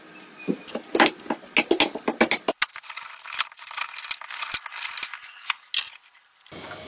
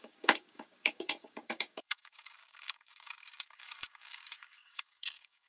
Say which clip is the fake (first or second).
second